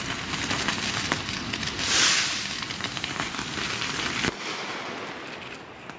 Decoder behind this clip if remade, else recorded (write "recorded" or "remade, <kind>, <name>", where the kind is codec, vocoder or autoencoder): recorded